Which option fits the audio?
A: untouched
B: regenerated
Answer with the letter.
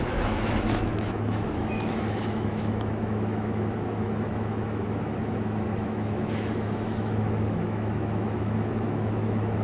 B